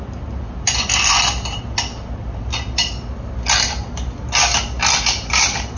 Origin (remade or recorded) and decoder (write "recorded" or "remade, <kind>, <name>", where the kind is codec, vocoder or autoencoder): recorded